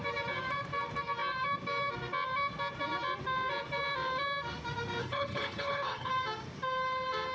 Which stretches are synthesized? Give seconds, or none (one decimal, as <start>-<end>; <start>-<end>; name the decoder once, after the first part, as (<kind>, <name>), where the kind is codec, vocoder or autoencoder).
5.0-6.1 (codec, HILCodec)